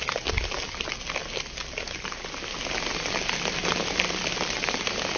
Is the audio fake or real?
real